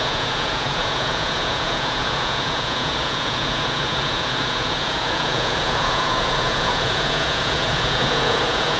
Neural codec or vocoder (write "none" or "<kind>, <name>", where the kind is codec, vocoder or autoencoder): vocoder, Vocos